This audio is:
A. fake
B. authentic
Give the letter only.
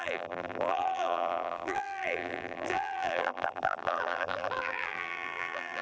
A